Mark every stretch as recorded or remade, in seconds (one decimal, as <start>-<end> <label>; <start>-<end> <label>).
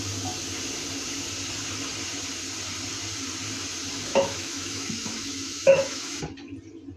0.0-4.1 recorded; 4.1-6.2 remade; 6.2-7.0 recorded